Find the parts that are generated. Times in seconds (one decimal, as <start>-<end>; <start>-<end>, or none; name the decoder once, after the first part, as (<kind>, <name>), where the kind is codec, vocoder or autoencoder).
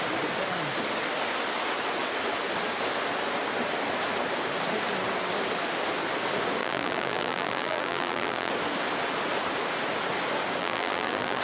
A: 6.6-8.5 (vocoder, BigVGAN v2); 10.6-11.4